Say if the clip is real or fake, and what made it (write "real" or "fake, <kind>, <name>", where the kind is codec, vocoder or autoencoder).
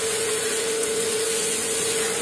fake, vocoder, Vocos